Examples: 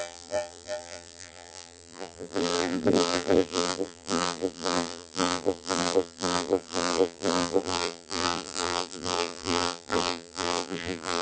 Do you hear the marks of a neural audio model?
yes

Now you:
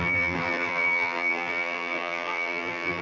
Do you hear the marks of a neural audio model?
yes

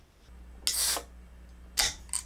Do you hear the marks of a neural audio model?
no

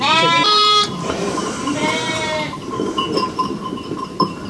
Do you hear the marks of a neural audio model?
yes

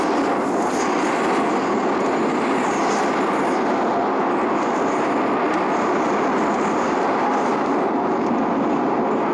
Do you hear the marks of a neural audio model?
no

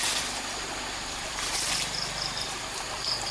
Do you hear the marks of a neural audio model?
yes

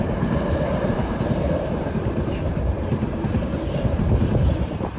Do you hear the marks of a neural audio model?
yes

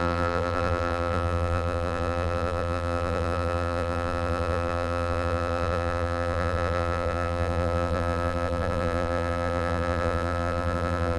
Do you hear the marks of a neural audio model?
yes